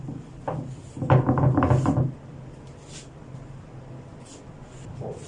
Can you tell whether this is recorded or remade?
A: recorded